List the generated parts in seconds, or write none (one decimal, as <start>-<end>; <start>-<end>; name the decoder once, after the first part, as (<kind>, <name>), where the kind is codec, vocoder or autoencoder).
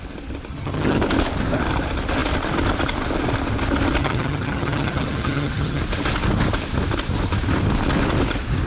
0.5-1.0 (vocoder, HiFi-GAN); 4.0-5.8